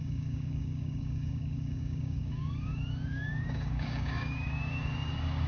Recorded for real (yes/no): no